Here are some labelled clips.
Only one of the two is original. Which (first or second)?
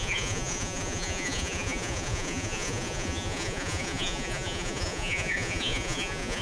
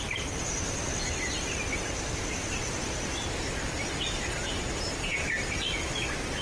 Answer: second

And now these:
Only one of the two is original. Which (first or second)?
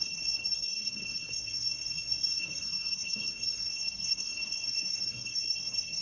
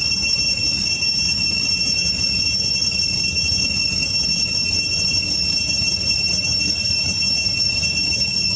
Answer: second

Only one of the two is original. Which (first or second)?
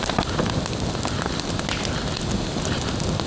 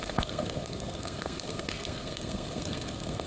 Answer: first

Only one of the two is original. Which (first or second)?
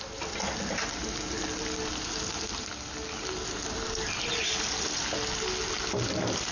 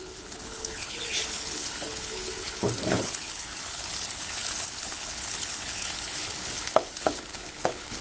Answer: first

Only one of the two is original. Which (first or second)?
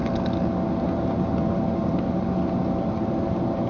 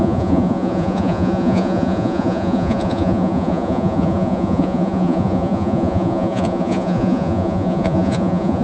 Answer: first